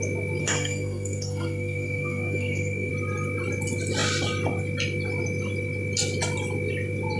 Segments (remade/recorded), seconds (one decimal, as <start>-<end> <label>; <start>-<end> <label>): 0.0-0.4 recorded; 0.4-2.9 remade; 2.9-7.2 recorded